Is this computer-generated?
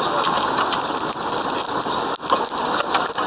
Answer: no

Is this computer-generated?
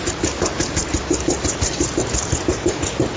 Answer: no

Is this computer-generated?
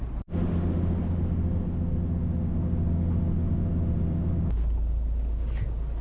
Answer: no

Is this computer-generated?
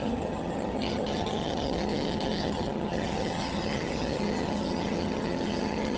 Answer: yes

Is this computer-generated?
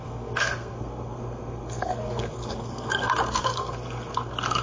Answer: yes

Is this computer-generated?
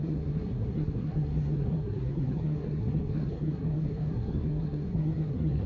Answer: yes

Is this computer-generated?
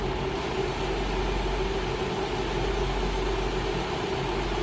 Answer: no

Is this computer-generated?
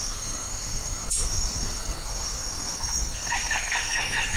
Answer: yes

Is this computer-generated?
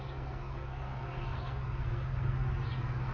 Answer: yes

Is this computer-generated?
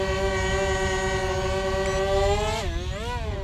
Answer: no